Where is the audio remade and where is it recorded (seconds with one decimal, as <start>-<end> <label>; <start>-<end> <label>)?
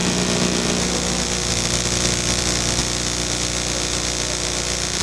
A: 0.0-1.5 recorded; 1.5-2.8 remade; 2.8-5.0 recorded